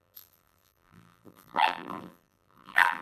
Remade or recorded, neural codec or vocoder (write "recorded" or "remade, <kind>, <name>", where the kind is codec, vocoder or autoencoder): remade, vocoder, BigVGAN v2